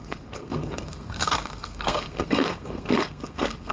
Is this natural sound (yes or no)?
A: no